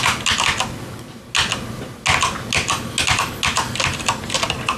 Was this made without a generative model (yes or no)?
yes